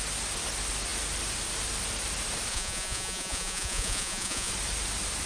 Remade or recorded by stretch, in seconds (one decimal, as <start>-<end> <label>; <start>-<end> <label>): 0.0-2.5 recorded; 2.5-4.5 remade; 4.5-5.3 recorded